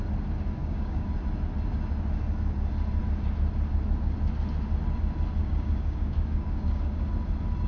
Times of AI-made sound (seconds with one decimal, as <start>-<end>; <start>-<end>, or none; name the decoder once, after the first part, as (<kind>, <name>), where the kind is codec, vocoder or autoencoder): 0.6-1.1 (codec, DAC); 5.4-7.1